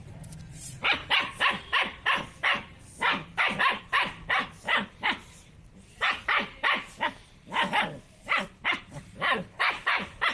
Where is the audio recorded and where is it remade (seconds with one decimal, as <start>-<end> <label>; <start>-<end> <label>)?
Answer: 0.0-1.0 remade; 1.0-3.8 recorded; 3.8-10.3 remade